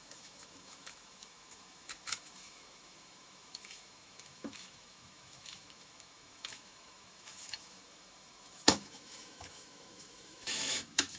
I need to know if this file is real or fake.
fake